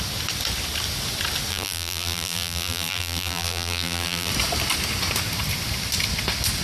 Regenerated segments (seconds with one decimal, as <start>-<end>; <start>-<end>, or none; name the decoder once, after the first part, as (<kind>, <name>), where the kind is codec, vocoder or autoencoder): 1.5-4.3 (vocoder, BigVGAN v2)

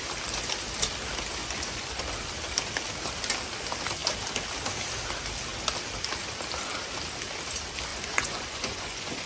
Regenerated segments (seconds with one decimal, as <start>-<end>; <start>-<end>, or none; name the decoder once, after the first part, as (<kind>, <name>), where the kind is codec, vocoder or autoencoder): 1.4-2.0 (vocoder, Vocos); 7.9-9.3

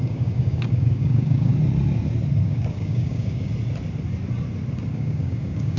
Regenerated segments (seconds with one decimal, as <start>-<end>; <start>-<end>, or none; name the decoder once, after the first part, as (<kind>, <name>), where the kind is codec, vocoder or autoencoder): 0.0-1.5 (codec, DAC); 2.4-3.5; 4.9-5.8

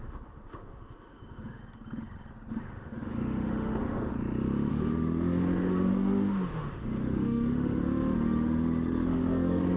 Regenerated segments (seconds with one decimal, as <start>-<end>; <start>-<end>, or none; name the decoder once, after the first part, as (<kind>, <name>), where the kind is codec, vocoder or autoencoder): 0.0-1.6 (autoencoder, DAC-VAE); 2.5-4.1; 4.7-9.8

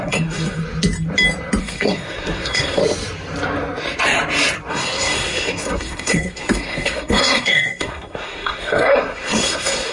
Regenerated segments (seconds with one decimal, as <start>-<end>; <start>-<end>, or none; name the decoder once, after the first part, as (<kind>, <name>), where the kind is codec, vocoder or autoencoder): 0.0-0.6 (codec, SNAC); 1.6-2.8; 4.7-9.9